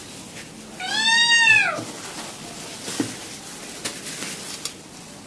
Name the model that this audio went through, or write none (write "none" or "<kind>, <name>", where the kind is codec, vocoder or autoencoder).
none